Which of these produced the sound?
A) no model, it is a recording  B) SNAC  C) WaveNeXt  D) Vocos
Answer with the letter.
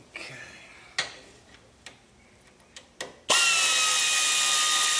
A